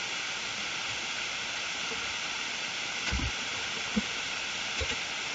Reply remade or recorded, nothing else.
remade